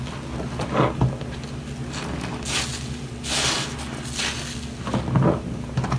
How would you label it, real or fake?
real